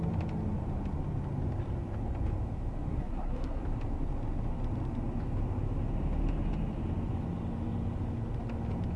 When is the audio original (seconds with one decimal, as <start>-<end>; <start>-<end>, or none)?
0.0-2.9; 3.6-9.0